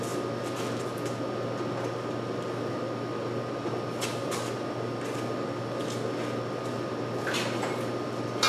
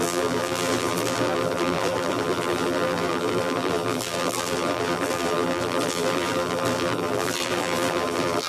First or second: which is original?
first